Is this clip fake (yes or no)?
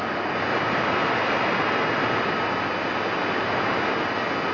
no